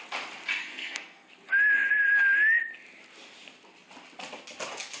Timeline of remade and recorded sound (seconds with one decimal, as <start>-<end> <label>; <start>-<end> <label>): 0.0-0.6 recorded; 0.6-1.3 remade; 1.3-5.0 recorded